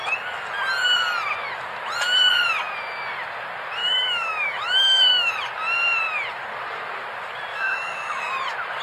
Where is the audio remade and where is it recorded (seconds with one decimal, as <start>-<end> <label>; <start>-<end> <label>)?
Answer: 0.0-3.8 recorded; 3.8-5.3 remade; 5.3-7.5 recorded; 7.5-8.3 remade; 8.3-8.8 recorded